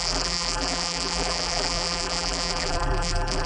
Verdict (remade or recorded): remade